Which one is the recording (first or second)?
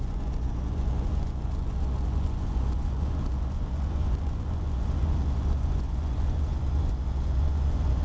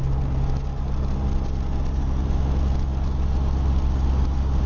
second